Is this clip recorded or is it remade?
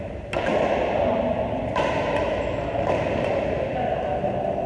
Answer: recorded